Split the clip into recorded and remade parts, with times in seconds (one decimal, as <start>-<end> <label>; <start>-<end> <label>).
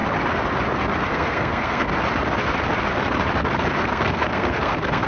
0.0-1.1 recorded; 1.1-1.9 remade; 1.9-3.8 recorded; 3.8-5.1 remade